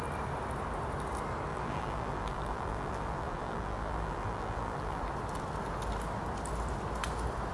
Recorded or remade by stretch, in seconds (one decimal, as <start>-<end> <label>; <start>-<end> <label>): 0.0-1.5 recorded; 1.5-5.0 remade; 5.0-7.5 recorded